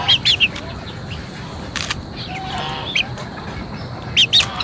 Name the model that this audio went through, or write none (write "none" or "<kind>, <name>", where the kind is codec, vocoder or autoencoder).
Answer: none